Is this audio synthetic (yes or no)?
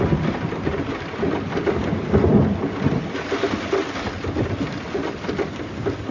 no